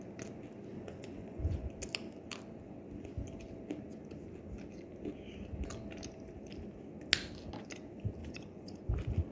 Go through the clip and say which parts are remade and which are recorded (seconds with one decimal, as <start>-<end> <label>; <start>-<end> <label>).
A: 0.0-0.7 recorded; 0.7-1.7 remade; 1.7-8.2 recorded; 8.2-8.8 remade; 8.8-9.3 recorded